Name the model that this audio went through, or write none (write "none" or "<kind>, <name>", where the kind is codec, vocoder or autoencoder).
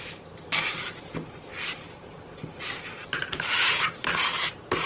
vocoder, BigVGAN v2